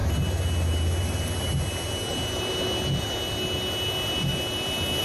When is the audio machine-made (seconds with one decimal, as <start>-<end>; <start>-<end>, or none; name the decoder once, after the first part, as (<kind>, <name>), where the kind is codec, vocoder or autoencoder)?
none